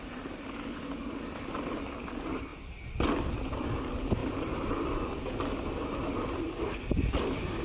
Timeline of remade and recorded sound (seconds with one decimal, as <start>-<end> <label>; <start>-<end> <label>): 0.0-4.2 recorded; 4.2-4.8 remade; 4.8-7.6 recorded